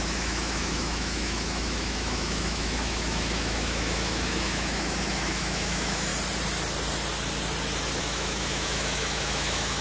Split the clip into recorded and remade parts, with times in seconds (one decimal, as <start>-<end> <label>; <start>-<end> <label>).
0.0-6.1 remade; 6.1-8.0 recorded; 8.0-9.8 remade